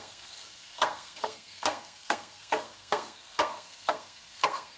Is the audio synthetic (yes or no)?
yes